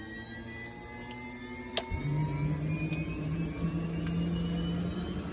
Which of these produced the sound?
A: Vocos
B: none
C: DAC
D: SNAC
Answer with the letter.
B